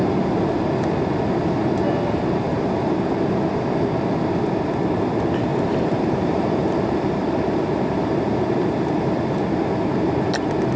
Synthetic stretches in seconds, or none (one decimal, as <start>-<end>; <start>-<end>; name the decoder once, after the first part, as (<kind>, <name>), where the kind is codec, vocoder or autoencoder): 5.5-9.2 (vocoder, BigVGAN v2)